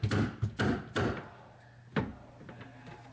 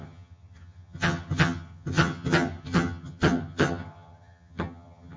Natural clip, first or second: first